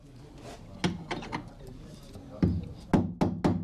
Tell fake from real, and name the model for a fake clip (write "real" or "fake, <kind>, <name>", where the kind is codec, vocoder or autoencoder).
real